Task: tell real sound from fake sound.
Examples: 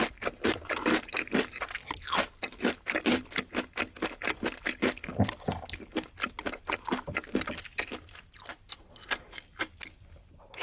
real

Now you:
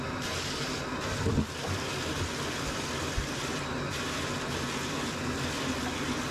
fake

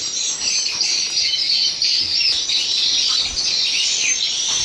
real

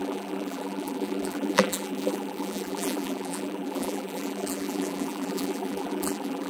fake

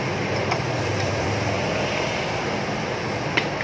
fake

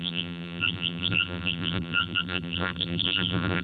fake